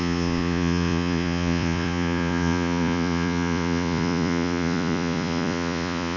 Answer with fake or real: fake